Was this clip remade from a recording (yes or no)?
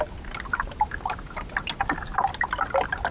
no